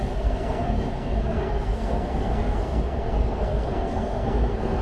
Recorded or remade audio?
remade